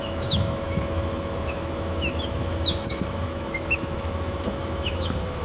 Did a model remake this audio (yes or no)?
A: yes